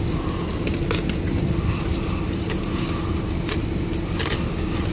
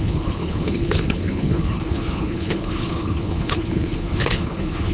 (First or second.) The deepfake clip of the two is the second